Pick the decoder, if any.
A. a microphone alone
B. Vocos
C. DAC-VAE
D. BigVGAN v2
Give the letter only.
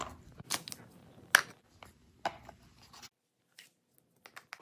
A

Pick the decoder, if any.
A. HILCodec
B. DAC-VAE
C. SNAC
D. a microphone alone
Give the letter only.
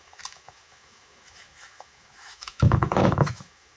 B